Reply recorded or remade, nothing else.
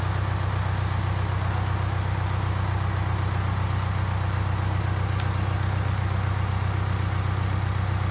recorded